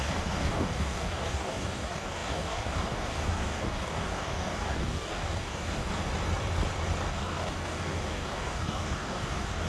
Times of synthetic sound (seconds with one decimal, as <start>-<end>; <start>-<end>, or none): 0.0-5.9; 7.1-9.7